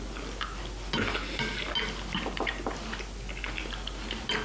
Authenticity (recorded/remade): recorded